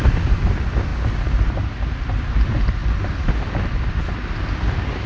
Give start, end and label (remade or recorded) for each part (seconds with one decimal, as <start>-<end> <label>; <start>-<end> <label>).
0.0-5.1 recorded